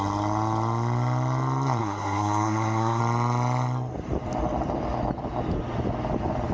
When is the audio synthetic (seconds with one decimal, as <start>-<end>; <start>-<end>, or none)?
1.8-3.0

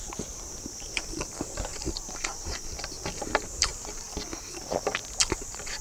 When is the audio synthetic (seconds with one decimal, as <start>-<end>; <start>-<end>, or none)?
0.0-3.7